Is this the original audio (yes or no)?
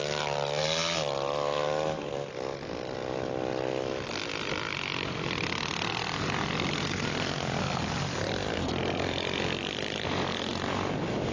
yes